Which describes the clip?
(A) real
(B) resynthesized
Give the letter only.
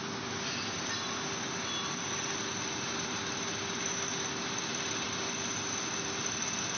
A